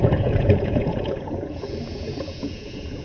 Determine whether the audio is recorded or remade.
remade